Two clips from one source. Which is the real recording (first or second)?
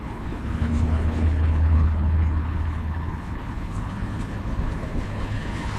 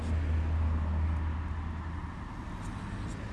second